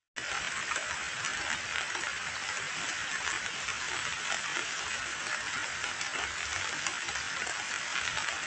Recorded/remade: recorded